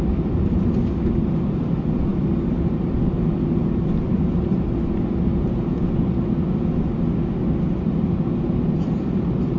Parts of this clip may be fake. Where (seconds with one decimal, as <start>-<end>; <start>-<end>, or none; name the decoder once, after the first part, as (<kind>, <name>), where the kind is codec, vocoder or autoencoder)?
none